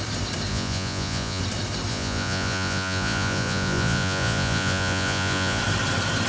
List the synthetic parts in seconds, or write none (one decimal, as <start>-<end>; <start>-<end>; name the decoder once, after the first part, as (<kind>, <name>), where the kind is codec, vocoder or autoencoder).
0.5-1.4 (vocoder, Vocos); 1.9-5.6